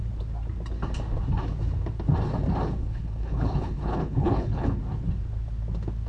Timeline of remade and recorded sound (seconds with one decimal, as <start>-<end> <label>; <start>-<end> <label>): 0.0-2.8 recorded; 2.8-4.8 remade; 4.8-6.1 recorded